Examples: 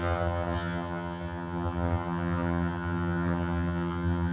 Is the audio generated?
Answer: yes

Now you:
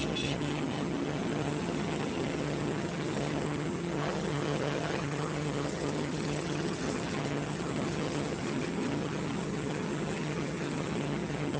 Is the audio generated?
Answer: yes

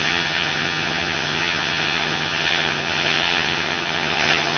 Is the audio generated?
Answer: yes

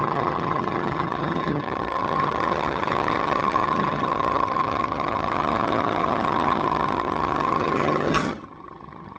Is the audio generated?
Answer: yes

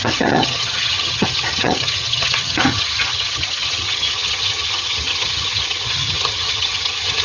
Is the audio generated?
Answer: yes